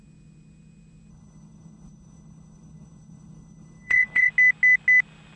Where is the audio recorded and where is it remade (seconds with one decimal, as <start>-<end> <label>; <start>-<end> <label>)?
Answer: 0.0-1.1 recorded; 1.1-4.3 remade; 4.3-5.4 recorded